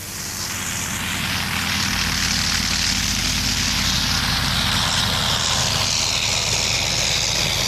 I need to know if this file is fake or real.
real